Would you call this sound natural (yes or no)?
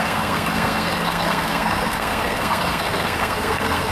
no